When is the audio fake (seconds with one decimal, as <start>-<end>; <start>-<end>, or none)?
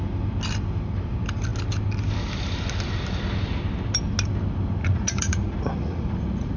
4.8-6.6